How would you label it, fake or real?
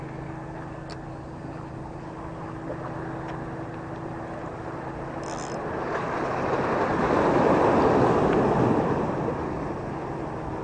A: real